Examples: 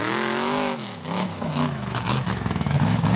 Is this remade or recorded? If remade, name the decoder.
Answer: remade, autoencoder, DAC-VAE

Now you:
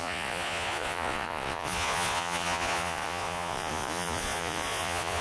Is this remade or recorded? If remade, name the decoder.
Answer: remade, vocoder, Vocos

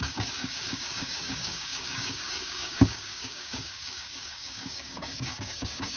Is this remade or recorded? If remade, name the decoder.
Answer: remade, codec, DAC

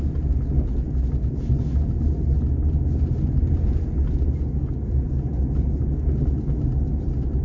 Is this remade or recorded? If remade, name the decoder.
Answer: recorded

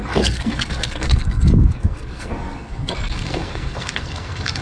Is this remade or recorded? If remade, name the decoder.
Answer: remade, codec, SNAC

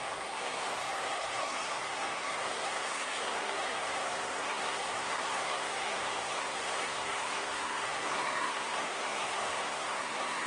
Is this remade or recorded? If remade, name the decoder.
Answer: remade, codec, SNAC